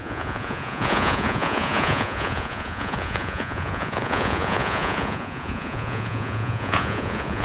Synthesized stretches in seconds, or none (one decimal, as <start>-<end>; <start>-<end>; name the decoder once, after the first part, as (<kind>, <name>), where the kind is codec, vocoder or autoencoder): 0.0-7.4 (vocoder, Vocos)